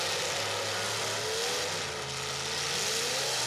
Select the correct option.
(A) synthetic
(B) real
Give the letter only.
B